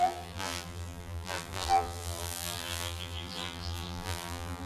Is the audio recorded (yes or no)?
no